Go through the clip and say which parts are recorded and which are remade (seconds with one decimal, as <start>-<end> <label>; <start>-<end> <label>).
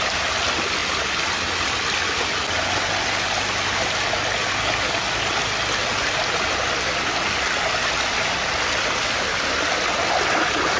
0.0-10.8 recorded